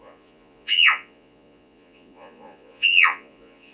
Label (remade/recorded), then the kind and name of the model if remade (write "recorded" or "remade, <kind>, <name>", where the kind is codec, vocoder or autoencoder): remade, vocoder, Vocos